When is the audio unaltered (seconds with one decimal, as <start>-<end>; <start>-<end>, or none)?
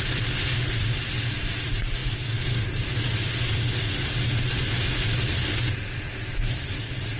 0.0-7.2